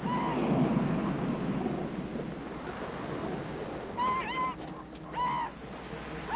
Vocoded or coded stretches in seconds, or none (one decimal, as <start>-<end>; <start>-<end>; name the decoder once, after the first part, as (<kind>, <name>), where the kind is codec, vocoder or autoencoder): none